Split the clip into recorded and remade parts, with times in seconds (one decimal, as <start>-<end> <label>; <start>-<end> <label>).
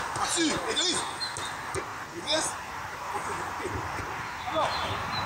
0.0-1.9 recorded; 1.9-5.3 remade